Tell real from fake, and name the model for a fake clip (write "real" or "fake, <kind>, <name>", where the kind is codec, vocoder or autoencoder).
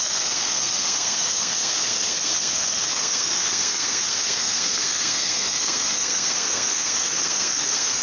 fake, codec, SNAC